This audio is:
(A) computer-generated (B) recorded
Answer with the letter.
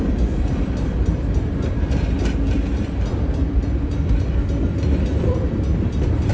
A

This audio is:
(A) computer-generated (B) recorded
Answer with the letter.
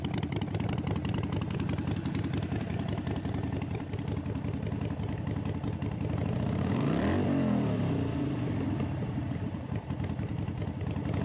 A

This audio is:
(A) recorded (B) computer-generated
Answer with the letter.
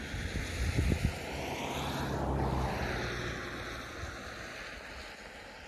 A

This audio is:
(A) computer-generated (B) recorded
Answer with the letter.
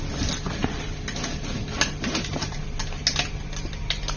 B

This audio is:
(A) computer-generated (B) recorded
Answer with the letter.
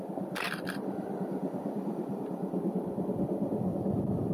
A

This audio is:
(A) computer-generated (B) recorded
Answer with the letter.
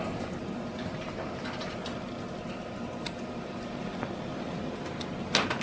B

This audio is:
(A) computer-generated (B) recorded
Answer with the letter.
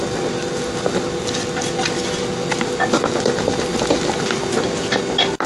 B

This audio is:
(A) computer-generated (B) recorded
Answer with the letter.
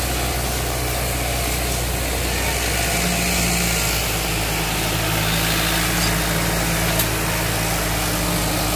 B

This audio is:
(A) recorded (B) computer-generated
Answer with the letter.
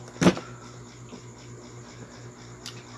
A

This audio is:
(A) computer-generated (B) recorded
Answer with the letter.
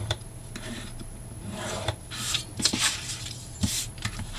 A